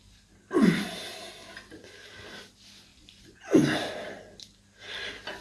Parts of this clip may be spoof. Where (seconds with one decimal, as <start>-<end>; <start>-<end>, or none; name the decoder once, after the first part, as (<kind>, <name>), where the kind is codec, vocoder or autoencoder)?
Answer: 2.9-3.6 (vocoder, Vocos)